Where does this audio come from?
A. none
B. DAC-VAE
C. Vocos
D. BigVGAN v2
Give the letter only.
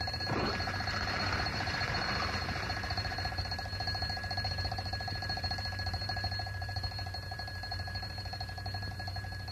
D